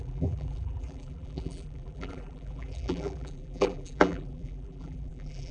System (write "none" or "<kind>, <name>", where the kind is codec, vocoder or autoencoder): vocoder, BigVGAN v2